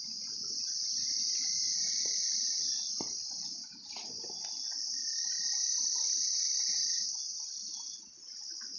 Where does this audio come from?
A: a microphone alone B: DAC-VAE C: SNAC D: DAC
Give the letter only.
A